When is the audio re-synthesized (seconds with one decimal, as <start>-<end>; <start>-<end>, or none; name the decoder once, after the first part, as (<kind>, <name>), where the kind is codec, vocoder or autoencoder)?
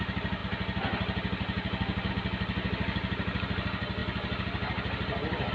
none